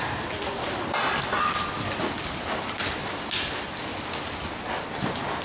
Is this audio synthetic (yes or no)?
no